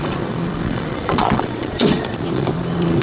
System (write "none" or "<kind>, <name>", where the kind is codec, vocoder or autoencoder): vocoder, Vocos